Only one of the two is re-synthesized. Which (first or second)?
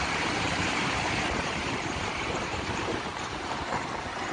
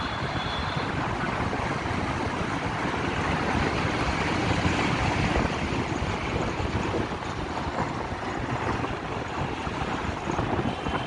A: first